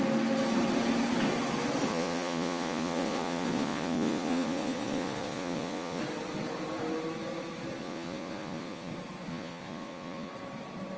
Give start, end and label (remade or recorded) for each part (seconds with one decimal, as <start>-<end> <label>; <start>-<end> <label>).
0.0-1.9 recorded; 1.9-6.0 remade; 6.0-7.8 recorded; 7.8-8.9 remade; 8.9-9.3 recorded; 9.3-10.3 remade; 10.3-11.0 recorded